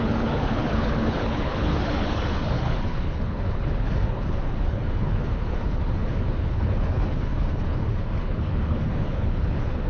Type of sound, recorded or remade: remade